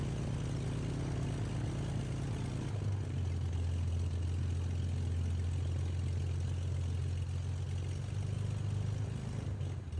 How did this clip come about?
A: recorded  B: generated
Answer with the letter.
A